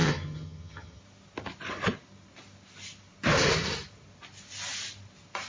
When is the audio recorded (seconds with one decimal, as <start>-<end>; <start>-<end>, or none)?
1.0-5.5